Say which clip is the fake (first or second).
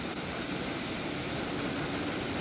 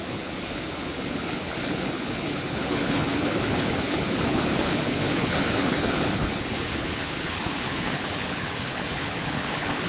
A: second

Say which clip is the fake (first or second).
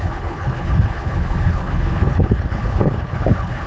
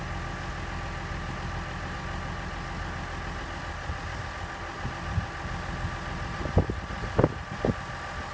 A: first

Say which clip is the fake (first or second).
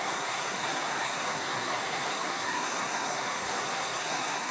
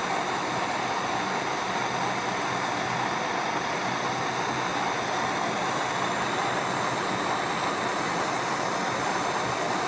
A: first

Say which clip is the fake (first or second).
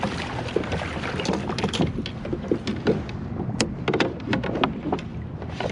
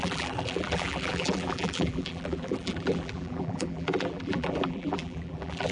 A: second